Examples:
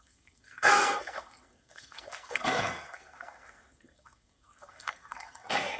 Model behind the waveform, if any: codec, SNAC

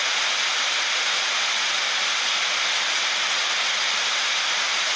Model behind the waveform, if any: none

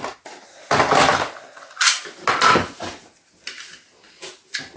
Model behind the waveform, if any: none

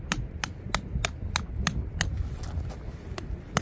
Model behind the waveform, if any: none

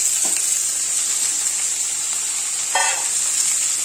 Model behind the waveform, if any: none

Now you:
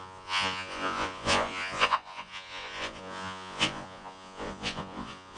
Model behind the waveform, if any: vocoder, Vocos